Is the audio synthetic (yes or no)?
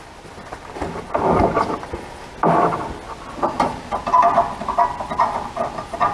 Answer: no